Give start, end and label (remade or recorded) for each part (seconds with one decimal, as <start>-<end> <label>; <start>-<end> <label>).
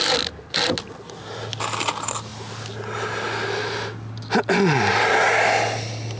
0.0-6.2 recorded